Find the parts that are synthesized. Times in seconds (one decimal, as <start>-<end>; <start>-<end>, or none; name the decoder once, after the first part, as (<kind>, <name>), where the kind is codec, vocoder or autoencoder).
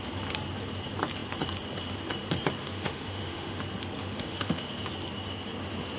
2.6-3.6 (autoencoder, DAC-VAE); 4.0-4.7